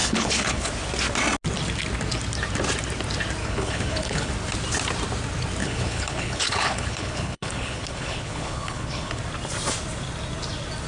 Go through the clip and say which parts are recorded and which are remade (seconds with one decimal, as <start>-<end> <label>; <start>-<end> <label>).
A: 0.0-0.7 remade; 0.7-3.4 recorded; 3.4-4.3 remade; 4.3-5.6 recorded; 5.6-9.2 remade; 9.2-10.9 recorded